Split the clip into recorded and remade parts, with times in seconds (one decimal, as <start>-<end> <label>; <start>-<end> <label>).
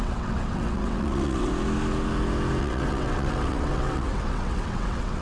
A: 0.0-1.5 remade; 1.5-2.6 recorded; 2.6-5.2 remade